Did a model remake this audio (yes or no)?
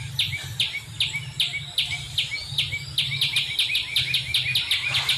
no